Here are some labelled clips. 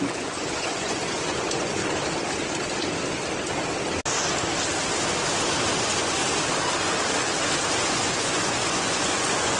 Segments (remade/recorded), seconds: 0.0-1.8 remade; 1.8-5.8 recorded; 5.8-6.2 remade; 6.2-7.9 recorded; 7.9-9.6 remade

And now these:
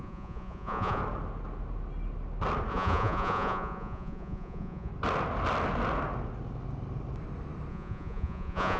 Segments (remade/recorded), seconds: 0.0-1.0 remade; 1.0-2.7 recorded; 2.7-4.9 remade; 4.9-7.7 recorded; 7.7-8.8 remade

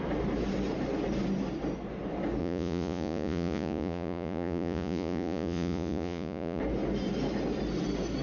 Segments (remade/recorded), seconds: 0.0-2.4 recorded; 2.4-6.6 remade; 6.6-8.2 recorded

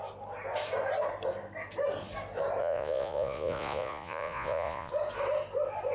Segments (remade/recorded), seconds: 0.0-2.6 recorded; 2.6-4.9 remade; 4.9-5.9 recorded